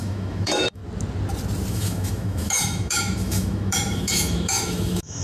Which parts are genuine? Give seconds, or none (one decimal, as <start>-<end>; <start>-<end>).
0.8-1.7